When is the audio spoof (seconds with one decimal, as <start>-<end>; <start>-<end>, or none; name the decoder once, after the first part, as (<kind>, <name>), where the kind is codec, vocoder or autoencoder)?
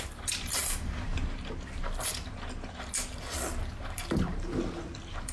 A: 0.0-0.6 (vocoder, BigVGAN v2); 3.7-5.3